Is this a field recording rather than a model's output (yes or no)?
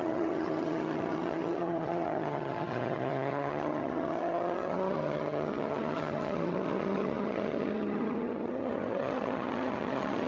no